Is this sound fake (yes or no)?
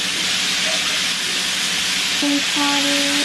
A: no